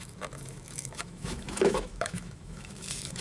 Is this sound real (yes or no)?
no